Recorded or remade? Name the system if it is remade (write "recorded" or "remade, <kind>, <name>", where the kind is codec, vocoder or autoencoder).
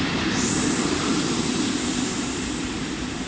remade, vocoder, BigVGAN v2